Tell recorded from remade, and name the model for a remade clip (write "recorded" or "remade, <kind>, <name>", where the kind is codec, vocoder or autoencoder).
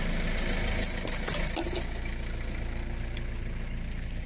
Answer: recorded